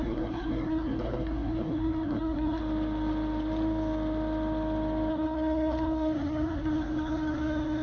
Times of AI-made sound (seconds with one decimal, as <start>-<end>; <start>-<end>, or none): 0.0-2.6; 5.1-7.8